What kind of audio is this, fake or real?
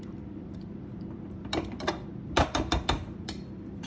fake